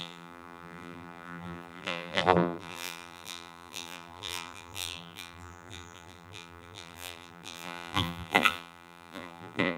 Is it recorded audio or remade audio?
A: remade